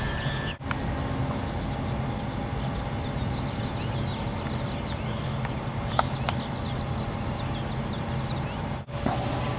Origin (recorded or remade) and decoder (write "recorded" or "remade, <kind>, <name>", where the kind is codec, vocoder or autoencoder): recorded